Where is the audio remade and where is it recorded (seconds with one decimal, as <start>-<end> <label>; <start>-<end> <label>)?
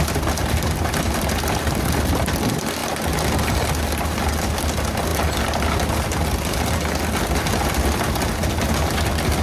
0.0-9.4 recorded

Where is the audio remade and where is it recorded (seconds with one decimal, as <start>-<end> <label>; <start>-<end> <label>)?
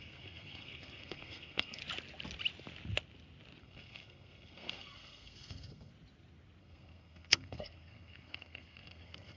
0.0-1.8 remade; 1.8-3.6 recorded; 3.6-5.9 remade; 5.9-6.6 recorded; 6.6-9.4 remade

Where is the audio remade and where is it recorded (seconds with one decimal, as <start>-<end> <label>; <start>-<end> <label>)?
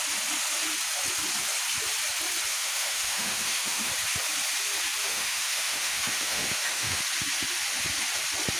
0.0-2.5 recorded; 2.5-3.9 remade; 3.9-5.1 recorded; 5.1-7.0 remade; 7.0-8.6 recorded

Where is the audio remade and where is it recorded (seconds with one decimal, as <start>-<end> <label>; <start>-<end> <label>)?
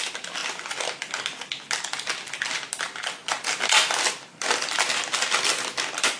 0.0-6.2 recorded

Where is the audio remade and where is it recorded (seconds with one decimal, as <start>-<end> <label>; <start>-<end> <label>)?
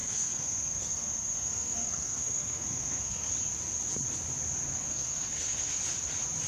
0.0-3.3 remade; 3.3-4.8 recorded; 4.8-5.8 remade; 5.8-6.5 recorded